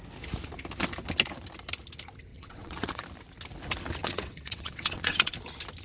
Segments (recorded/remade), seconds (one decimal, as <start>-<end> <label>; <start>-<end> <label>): 0.0-2.3 recorded; 2.3-3.0 remade; 3.0-4.0 recorded; 4.0-5.3 remade; 5.3-5.8 recorded